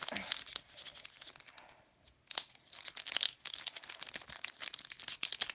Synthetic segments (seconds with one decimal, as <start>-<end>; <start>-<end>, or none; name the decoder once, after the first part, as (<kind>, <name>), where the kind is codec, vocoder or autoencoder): 3.3-4.0 (autoencoder, DAC-VAE)